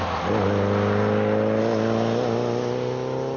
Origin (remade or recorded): recorded